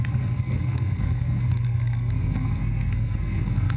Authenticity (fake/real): fake